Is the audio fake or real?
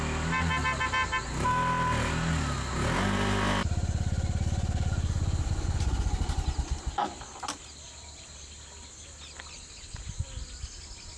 real